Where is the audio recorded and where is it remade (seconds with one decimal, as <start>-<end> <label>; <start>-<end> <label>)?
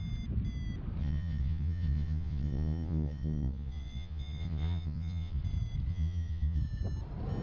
0.0-1.0 recorded; 1.0-5.4 remade; 5.4-5.9 recorded; 5.9-6.6 remade; 6.6-7.4 recorded